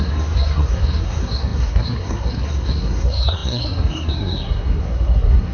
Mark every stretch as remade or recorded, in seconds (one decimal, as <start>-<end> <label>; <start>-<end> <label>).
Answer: 0.0-5.5 remade